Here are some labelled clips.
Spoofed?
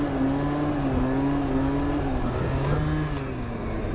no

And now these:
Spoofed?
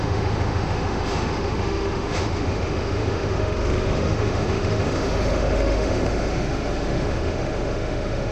yes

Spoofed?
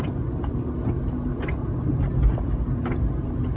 no